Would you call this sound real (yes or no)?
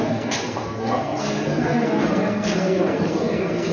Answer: no